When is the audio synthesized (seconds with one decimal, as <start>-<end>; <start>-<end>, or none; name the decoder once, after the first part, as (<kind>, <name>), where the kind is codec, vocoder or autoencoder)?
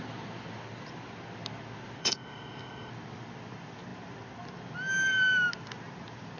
2.0-2.9 (codec, ZipCodec)